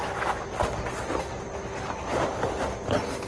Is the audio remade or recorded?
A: recorded